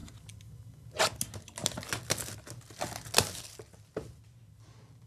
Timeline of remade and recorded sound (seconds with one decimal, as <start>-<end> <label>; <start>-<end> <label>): 0.0-5.1 recorded